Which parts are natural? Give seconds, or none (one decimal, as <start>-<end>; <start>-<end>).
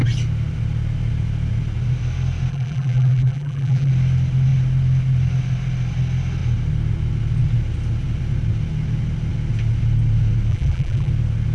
0.0-2.5; 3.9-10.5; 11.1-11.5